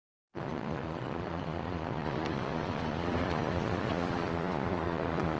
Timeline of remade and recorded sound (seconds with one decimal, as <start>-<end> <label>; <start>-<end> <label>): 0.0-5.4 remade